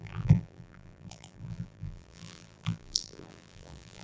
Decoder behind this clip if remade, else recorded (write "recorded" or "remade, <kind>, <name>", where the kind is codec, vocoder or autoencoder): remade, vocoder, BigVGAN v2